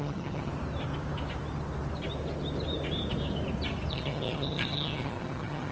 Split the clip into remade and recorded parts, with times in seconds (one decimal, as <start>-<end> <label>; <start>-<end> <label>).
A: 0.0-0.5 remade; 0.5-3.9 recorded; 3.9-5.7 remade